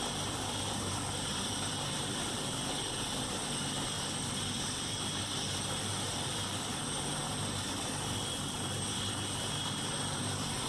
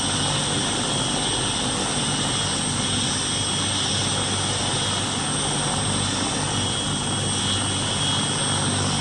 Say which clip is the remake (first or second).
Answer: first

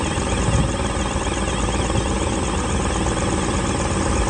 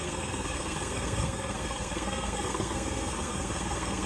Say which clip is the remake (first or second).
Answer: second